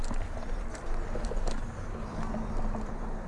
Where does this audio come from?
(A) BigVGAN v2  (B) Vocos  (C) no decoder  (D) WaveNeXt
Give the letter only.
C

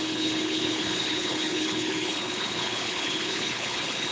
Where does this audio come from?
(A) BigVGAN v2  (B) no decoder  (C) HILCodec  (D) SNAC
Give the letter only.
C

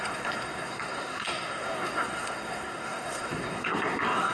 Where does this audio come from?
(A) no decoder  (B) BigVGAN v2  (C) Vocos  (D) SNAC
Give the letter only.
D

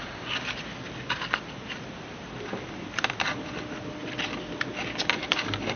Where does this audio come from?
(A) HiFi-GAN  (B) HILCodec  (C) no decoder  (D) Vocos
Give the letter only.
C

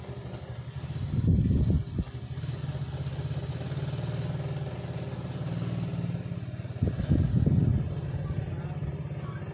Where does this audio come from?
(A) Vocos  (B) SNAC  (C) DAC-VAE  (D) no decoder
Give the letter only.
D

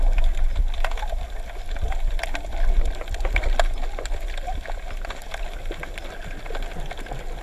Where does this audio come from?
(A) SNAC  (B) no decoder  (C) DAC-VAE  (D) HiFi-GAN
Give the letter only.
B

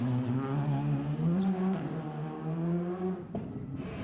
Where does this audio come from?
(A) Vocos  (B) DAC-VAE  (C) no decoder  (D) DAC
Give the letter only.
C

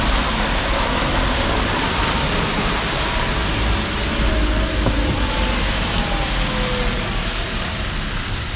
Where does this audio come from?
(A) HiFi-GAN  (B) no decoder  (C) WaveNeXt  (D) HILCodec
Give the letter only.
B